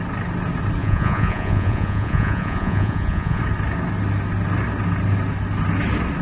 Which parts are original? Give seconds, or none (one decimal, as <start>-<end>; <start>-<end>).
0.0-0.8; 3.4-6.2